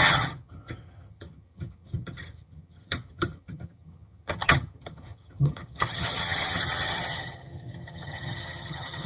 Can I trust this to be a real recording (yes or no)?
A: no